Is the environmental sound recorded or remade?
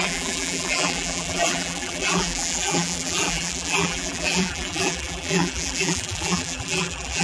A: remade